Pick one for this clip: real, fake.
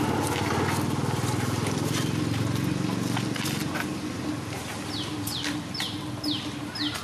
real